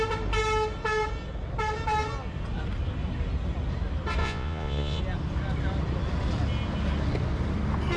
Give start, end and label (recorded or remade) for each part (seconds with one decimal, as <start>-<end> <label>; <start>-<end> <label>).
0.0-4.2 recorded; 4.2-5.0 remade; 5.0-8.0 recorded